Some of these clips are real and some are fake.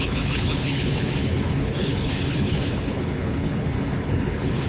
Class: fake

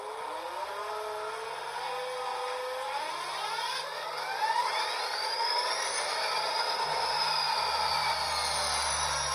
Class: real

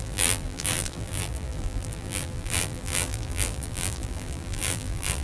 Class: fake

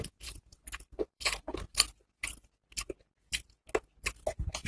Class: fake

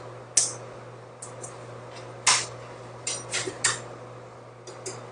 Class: real